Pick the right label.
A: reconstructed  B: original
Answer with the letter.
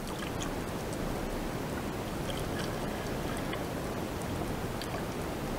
B